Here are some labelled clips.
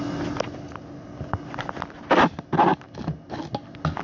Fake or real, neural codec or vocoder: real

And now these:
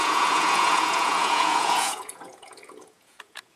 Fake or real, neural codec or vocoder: fake, vocoder, Vocos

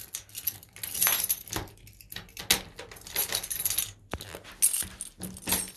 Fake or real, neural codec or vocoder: real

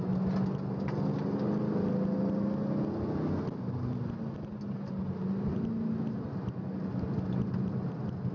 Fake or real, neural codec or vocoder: real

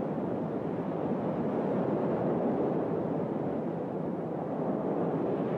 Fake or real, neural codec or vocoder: real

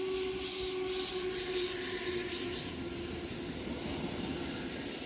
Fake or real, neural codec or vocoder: real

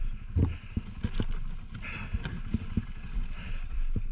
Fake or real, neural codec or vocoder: real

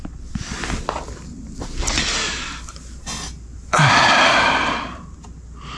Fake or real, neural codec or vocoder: real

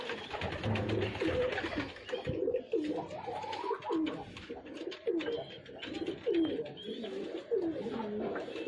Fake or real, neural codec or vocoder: real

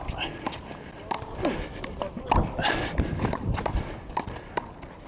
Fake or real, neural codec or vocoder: real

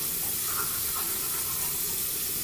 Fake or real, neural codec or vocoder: real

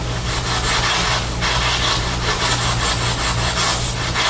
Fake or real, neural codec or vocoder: real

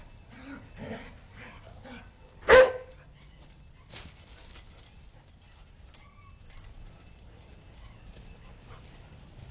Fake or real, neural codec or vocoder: real